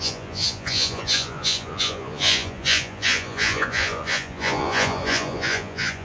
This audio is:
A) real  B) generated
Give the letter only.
B